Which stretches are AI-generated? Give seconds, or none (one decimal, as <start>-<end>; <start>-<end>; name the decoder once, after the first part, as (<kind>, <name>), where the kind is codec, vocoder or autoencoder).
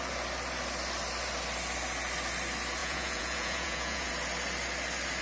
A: 2.8-4.1 (vocoder, Vocos)